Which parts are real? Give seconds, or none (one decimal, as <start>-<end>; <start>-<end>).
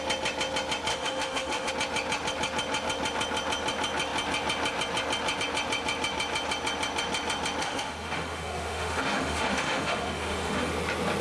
0.0-0.9; 1.7-7.6; 10.7-11.2